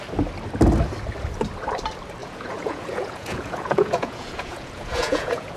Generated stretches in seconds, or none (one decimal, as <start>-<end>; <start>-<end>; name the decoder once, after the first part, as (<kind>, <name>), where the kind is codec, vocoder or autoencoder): 2.2-5.6 (vocoder, Vocos)